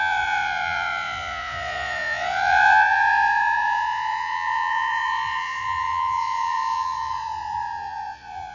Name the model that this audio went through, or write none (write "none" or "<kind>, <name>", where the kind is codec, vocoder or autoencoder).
vocoder, Vocos